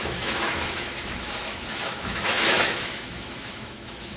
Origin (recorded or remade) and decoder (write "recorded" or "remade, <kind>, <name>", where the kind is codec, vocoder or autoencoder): remade, autoencoder, DAC-VAE